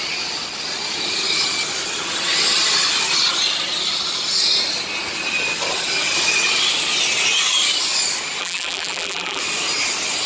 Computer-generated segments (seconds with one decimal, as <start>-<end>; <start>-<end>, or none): 8.4-9.4